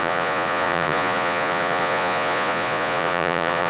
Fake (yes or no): yes